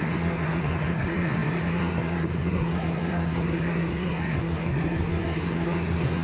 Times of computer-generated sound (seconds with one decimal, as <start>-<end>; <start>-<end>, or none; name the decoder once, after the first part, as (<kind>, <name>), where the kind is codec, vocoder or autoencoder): 0.0-6.2 (codec, SNAC)